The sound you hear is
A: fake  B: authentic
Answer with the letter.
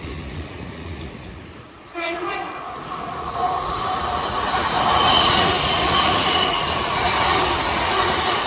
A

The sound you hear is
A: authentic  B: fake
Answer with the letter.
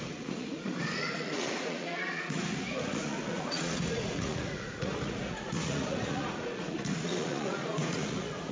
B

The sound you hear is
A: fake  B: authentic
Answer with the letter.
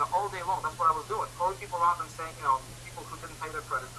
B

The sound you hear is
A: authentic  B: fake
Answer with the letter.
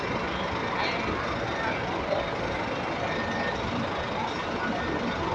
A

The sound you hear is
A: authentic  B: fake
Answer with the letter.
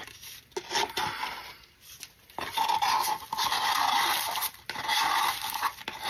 A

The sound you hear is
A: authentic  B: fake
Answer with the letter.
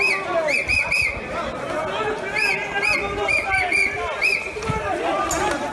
A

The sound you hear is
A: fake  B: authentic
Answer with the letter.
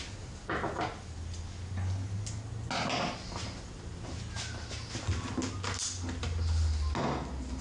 B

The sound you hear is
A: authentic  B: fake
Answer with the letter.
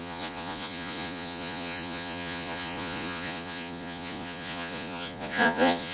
B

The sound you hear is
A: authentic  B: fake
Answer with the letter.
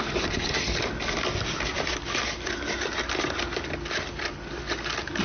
A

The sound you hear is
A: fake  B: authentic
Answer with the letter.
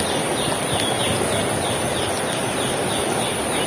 B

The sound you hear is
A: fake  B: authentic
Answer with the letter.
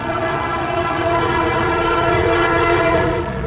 A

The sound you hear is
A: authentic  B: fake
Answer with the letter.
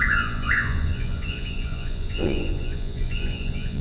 B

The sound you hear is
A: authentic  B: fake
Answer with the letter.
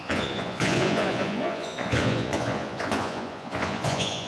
B